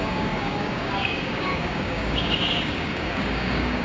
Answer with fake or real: fake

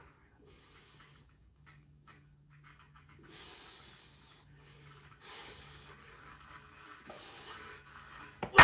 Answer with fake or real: fake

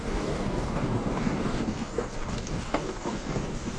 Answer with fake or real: fake